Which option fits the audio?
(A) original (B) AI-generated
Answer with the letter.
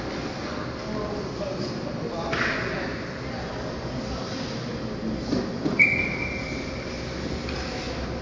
A